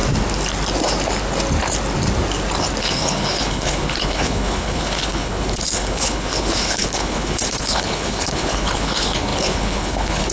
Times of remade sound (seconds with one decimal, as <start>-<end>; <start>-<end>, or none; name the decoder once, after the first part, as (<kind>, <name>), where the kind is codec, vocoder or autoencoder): 2.8-10.3 (codec, HILCodec)